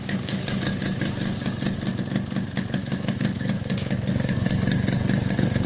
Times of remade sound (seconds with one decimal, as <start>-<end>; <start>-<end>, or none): 0.0-1.1; 2.8-5.7